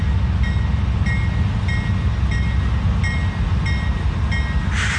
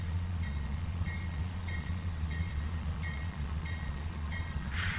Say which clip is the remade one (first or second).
second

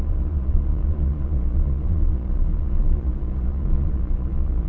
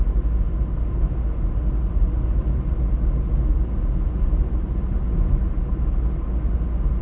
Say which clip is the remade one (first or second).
first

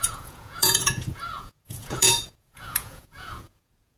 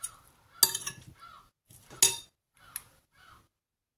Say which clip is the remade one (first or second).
first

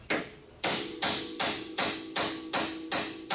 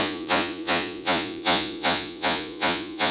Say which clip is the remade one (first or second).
second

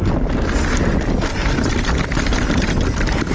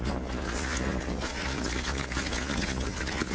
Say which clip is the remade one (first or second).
second